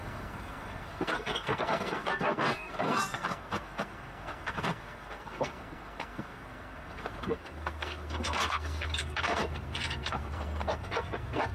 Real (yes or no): no